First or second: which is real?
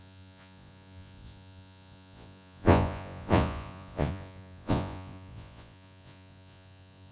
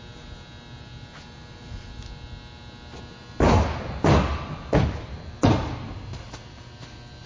second